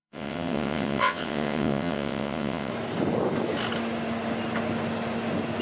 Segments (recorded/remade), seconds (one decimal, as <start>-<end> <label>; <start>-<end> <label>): 0.0-2.7 remade; 2.7-5.6 recorded